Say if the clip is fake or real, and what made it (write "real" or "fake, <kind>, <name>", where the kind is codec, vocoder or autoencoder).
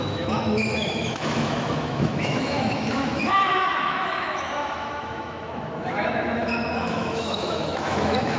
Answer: fake, autoencoder, DAC-VAE